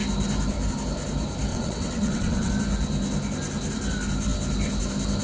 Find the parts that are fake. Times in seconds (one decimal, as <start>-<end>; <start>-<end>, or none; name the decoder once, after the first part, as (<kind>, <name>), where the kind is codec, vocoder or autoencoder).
1.5-2.5 (vocoder, WaveNeXt)